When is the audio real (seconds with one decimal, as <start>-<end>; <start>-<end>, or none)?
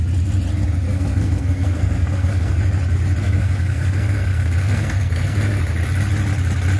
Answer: 0.0-0.9; 2.6-3.2; 5.6-6.8